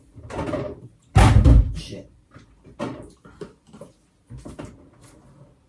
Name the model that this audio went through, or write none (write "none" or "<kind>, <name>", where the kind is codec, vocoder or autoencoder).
none